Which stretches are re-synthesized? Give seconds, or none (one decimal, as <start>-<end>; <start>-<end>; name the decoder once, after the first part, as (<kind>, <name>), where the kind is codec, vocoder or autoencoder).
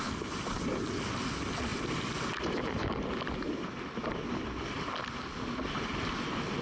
none